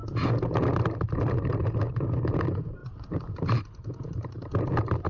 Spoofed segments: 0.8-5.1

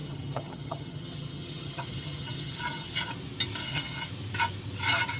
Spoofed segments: 0.0-3.1; 3.6-4.1

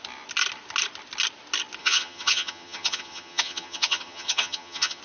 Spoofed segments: 1.8-5.0

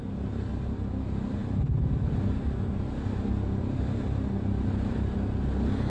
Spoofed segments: none

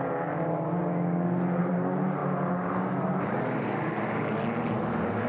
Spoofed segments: 0.0-0.8; 1.6-2.2; 3.2-5.3

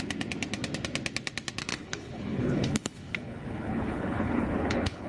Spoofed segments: 1.7-5.1